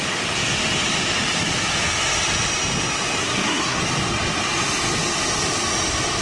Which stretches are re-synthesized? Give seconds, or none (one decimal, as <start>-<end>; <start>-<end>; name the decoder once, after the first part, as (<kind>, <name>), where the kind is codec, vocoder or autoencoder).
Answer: 3.2-3.8 (codec, SNAC)